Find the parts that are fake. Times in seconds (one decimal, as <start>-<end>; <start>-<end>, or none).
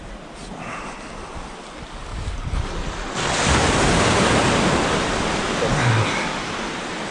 none